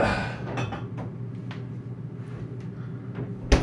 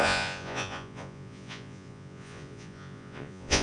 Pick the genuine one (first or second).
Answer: first